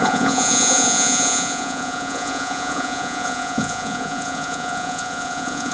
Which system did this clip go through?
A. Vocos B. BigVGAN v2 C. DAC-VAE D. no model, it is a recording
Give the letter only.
A